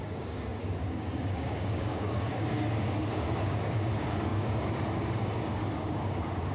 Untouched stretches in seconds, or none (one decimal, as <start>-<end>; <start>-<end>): none